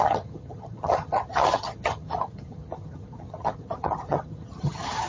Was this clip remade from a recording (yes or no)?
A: yes